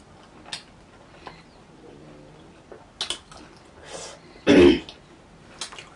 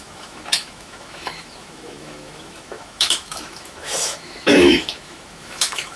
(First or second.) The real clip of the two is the first